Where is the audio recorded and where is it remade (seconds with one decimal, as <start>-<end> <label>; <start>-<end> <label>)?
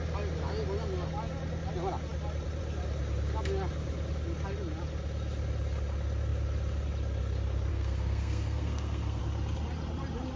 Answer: 0.0-7.7 recorded; 7.7-9.2 remade; 9.2-10.4 recorded